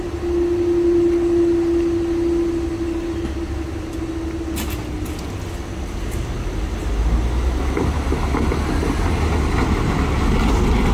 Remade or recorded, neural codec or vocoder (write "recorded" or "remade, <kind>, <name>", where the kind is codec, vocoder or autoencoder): recorded